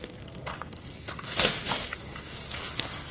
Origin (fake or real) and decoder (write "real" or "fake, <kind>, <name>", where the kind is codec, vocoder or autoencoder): fake, codec, SNAC